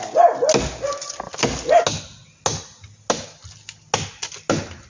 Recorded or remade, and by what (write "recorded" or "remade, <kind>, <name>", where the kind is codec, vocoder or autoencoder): recorded